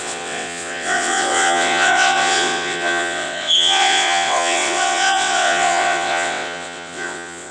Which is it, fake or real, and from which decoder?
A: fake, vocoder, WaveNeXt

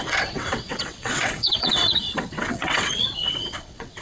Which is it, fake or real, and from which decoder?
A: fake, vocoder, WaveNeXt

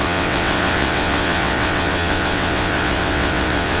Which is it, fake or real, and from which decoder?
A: fake, vocoder, WaveNeXt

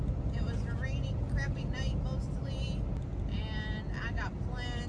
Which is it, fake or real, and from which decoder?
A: real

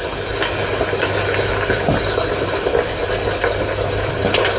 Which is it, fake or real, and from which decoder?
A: real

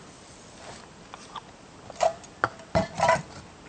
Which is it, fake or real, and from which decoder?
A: real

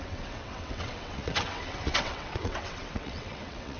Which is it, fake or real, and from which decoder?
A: fake, vocoder, WaveNeXt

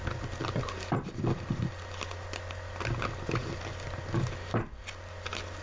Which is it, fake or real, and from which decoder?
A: real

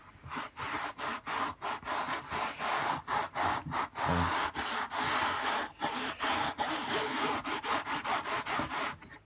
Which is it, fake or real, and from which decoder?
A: real